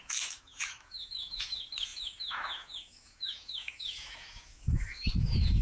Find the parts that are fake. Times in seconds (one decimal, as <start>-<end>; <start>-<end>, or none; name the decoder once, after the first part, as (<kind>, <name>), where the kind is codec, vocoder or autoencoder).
0.0-5.6 (autoencoder, DAC-VAE)